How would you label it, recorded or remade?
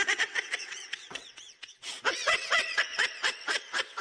remade